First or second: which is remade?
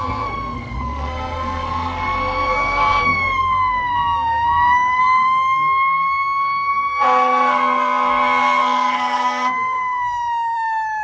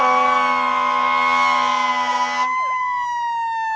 first